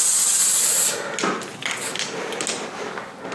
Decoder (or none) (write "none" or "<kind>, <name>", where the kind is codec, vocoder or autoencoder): none